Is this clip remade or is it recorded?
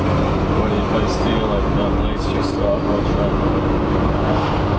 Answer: recorded